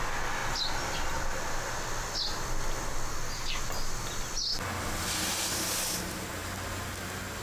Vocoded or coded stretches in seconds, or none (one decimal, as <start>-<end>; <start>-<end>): none